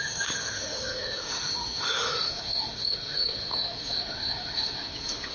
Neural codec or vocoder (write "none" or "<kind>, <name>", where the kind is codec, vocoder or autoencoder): autoencoder, DAC-VAE